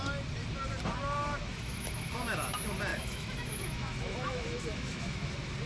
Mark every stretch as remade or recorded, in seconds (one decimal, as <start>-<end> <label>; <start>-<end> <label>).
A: 0.0-1.5 recorded; 1.5-2.1 remade; 2.1-2.9 recorded; 2.9-5.3 remade; 5.3-5.7 recorded